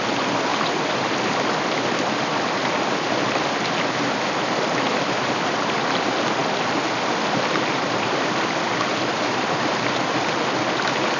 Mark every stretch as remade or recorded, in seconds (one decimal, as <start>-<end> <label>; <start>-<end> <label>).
0.0-11.2 recorded